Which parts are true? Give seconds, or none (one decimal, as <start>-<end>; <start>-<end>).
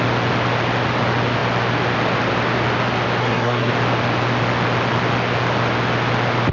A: 0.0-3.2; 3.7-6.5